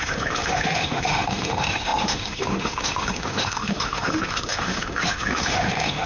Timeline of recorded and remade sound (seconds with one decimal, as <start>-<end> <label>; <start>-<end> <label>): 0.0-6.1 remade